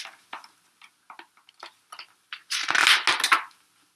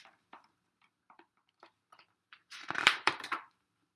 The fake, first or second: second